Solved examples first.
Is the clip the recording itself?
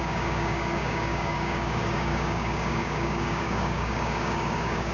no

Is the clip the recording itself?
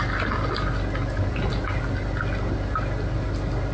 yes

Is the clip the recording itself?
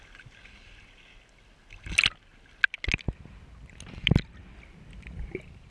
yes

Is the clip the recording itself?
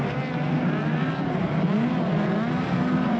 yes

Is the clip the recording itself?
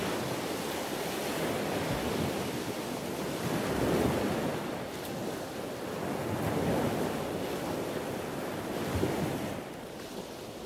yes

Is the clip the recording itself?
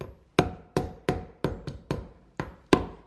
yes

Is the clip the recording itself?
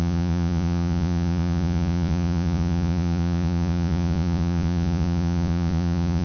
no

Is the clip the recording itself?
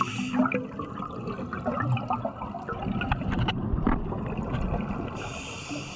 yes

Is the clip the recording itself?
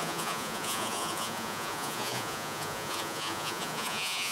no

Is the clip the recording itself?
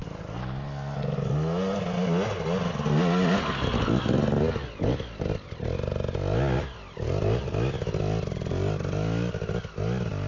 yes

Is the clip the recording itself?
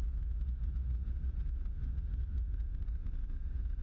no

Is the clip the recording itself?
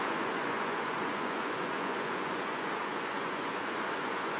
no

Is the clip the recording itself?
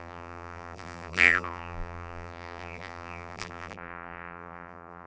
no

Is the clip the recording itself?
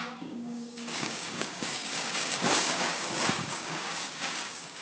no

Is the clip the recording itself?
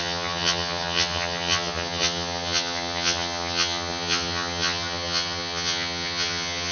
no